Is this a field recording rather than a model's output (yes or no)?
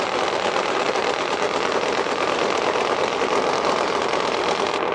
no